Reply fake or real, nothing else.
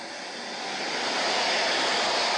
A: real